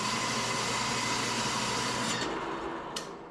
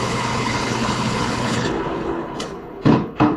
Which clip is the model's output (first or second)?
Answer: second